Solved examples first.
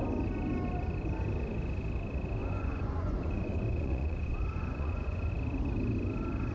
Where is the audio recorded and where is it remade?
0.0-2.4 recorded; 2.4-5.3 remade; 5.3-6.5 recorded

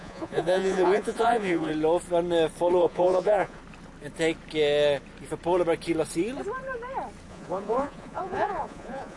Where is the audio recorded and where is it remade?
0.0-1.7 remade; 1.7-2.8 recorded; 2.8-3.6 remade; 3.6-7.3 recorded; 7.3-9.2 remade